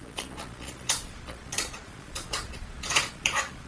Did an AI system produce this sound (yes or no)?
yes